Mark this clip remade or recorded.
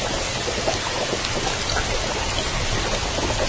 recorded